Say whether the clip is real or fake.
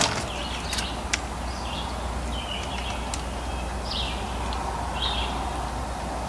real